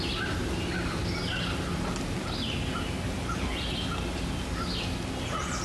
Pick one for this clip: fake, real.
real